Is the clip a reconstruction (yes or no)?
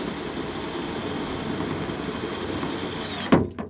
no